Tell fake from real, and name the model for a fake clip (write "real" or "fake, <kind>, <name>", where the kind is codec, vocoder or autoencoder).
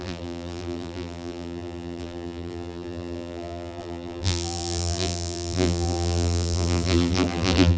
fake, vocoder, BigVGAN v2